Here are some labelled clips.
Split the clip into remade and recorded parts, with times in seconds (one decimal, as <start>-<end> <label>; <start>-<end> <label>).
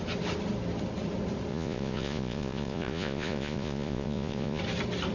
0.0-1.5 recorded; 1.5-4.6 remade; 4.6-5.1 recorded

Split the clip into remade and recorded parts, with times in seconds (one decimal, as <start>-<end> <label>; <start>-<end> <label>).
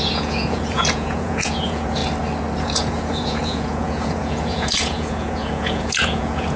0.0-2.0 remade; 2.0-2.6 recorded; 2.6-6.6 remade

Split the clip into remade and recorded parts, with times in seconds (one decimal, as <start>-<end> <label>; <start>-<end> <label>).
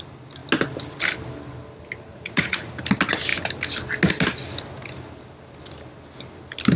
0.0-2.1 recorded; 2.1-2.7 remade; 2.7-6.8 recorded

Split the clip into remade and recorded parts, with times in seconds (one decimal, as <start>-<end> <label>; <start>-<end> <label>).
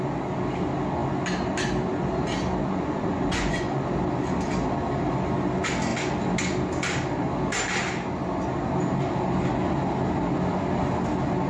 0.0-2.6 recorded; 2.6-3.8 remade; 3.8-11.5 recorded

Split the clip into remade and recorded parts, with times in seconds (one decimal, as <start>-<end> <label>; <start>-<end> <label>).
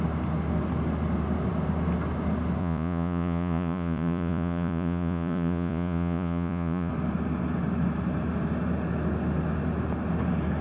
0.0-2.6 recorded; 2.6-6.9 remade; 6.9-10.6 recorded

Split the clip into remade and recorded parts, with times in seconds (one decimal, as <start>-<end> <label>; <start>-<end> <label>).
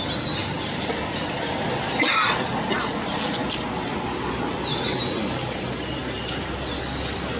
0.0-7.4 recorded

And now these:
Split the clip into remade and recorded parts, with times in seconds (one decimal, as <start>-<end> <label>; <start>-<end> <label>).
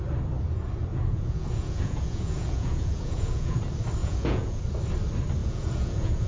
0.0-0.9 recorded; 0.9-3.6 remade; 3.6-4.0 recorded; 4.0-4.6 remade; 4.6-5.4 recorded; 5.4-6.3 remade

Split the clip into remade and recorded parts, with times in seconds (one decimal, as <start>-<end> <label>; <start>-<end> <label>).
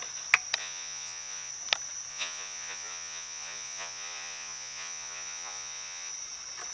0.0-0.6 recorded; 0.6-1.5 remade; 1.5-2.1 recorded; 2.1-6.1 remade; 6.1-6.7 recorded